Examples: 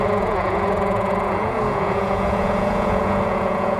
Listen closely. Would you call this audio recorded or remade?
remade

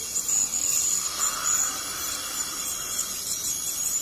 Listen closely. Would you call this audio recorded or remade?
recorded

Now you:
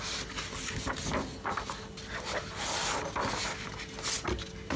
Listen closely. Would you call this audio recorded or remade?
recorded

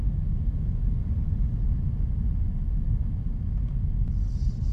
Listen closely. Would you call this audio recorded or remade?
recorded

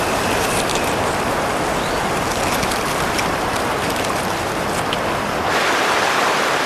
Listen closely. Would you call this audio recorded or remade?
remade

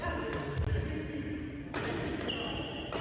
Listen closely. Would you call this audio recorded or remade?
recorded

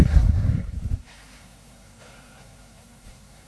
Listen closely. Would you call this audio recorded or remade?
remade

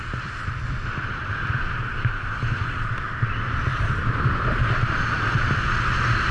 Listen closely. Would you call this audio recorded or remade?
remade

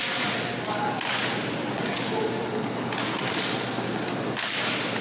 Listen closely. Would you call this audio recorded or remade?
recorded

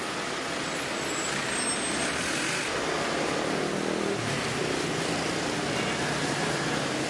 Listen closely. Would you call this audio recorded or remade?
recorded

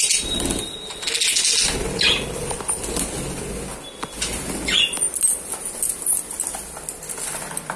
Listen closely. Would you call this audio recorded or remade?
recorded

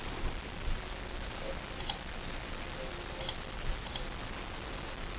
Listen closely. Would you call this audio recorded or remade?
recorded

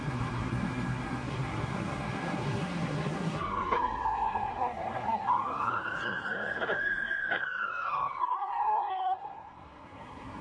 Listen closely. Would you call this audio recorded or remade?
remade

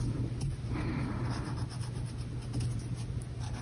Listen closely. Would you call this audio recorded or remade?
recorded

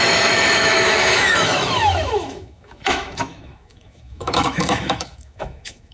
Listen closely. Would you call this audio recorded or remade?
remade